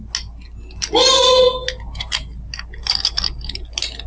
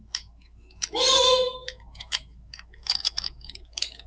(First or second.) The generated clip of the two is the second